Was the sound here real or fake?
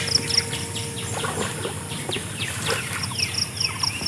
real